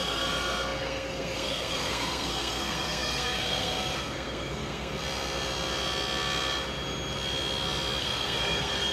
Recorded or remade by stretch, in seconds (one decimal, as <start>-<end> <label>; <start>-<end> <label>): 0.0-4.9 remade; 4.9-8.0 recorded; 8.0-8.9 remade